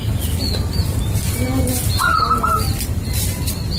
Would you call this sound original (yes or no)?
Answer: yes